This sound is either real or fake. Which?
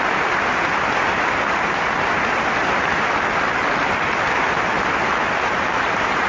real